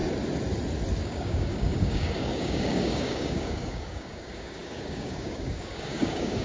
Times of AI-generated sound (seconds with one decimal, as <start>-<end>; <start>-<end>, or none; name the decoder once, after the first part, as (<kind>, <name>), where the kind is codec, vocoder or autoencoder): 1.0-6.4 (codec, DAC)